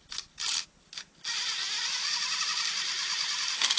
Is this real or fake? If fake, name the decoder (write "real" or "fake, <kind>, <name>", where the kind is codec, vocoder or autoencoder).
real